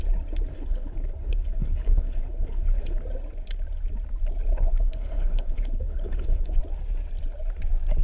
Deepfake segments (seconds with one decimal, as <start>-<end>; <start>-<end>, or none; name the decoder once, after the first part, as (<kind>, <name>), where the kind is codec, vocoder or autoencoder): 0.5-3.0 (codec, HILCodec); 4.5-6.6